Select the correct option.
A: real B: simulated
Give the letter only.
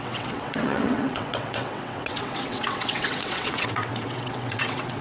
B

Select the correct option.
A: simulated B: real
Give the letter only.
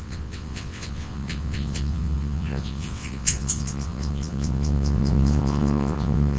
A